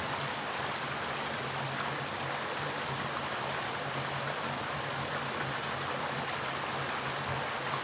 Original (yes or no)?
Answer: yes